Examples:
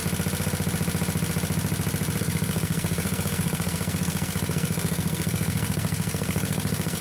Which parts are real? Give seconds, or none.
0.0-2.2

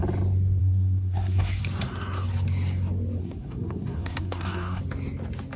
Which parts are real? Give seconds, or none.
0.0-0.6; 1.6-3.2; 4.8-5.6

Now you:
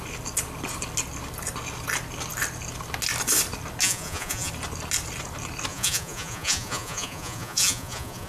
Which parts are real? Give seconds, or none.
0.0-3.8; 4.5-5.7

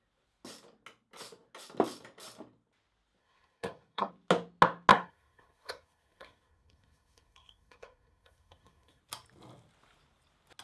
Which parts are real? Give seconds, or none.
0.0-3.2; 4.1-4.9; 9.0-10.6

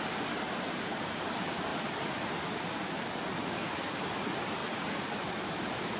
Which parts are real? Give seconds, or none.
0.0-6.0

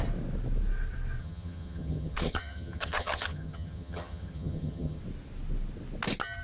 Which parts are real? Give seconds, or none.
0.0-1.2; 5.0-6.4